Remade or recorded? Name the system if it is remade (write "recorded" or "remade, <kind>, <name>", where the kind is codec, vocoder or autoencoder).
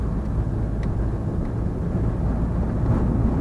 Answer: recorded